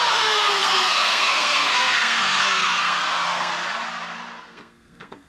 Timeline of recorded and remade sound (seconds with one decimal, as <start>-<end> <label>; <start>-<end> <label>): 0.0-3.5 remade; 3.5-4.4 recorded; 4.4-5.3 remade